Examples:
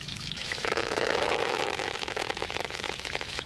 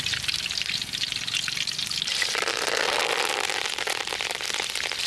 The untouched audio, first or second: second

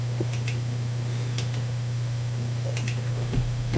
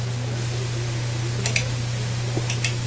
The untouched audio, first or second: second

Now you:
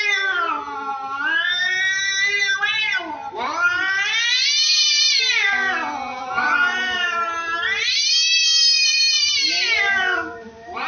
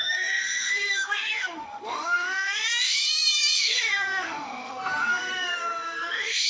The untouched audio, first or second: first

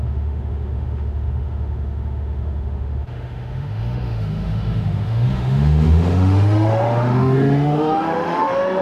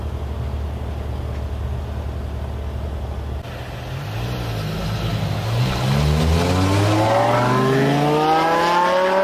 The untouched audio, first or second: second